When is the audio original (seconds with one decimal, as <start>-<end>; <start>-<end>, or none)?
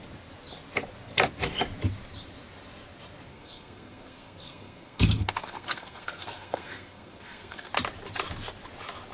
0.0-3.3; 7.7-9.1